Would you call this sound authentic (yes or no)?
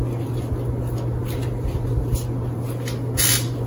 yes